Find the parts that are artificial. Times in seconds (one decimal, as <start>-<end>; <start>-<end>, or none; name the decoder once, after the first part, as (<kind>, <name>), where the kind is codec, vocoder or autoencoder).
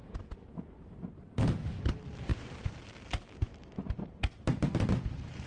1.3-5.5 (vocoder, BigVGAN v2)